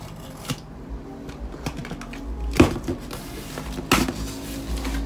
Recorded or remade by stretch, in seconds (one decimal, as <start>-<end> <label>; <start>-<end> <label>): 0.0-5.1 recorded